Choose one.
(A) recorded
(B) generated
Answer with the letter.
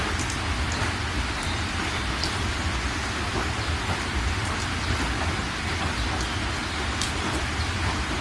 A